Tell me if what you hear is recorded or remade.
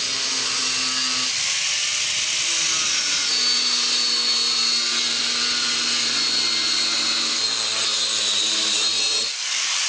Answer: recorded